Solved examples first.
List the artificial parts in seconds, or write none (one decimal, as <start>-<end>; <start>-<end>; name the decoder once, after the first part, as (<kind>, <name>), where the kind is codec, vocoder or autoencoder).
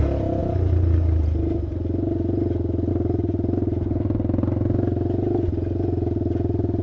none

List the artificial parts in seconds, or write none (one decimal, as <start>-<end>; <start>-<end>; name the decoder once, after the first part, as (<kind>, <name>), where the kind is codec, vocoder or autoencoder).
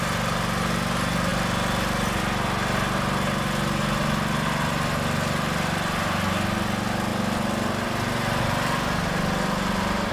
none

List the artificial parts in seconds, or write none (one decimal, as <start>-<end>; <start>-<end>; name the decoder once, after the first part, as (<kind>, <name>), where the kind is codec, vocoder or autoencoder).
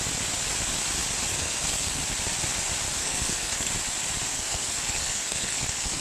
1.3-2.0 (codec, SNAC); 3.0-3.7; 4.3-6.0